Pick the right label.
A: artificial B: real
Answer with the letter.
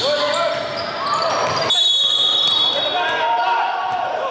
B